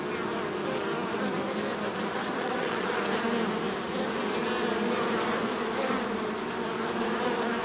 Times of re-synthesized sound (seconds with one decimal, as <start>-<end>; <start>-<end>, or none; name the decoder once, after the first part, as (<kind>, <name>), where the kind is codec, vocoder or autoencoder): 2.2-3.0 (vocoder, WaveNeXt)